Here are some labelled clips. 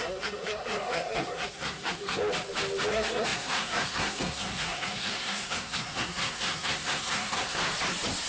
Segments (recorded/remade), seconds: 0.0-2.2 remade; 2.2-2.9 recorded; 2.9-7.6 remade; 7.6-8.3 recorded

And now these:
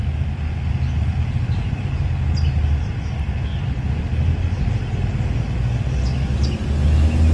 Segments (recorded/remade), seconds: 0.0-7.3 recorded

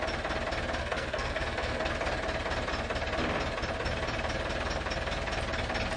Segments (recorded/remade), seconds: 0.0-0.8 recorded; 0.8-1.9 remade; 1.9-6.0 recorded

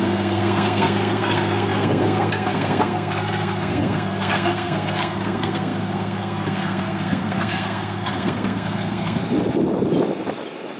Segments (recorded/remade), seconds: 0.0-9.2 remade; 9.2-10.8 recorded

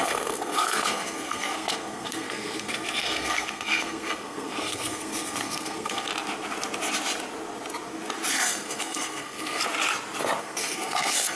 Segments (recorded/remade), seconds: 0.0-6.1 remade; 6.1-8.3 recorded; 8.3-9.6 remade; 9.6-10.4 recorded; 10.4-11.4 remade